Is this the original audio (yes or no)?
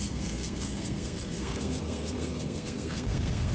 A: no